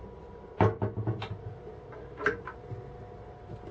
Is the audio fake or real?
real